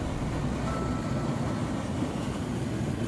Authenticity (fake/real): real